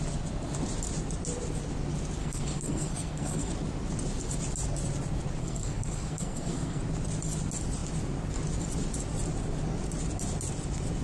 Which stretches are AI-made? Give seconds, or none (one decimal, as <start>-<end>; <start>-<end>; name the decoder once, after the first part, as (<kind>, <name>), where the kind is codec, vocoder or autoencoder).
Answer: 2.2-3.5 (codec, SNAC); 5.4-6.8